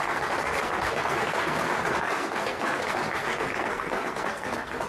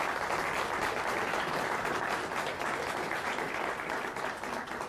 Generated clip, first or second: first